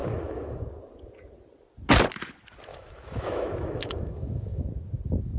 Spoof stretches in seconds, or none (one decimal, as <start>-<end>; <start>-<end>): 0.0-0.6; 2.7-4.6